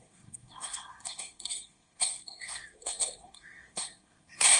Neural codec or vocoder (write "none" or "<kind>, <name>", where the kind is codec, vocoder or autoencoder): codec, SNAC